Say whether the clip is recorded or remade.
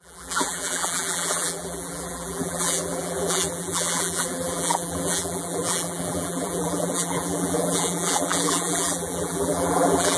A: remade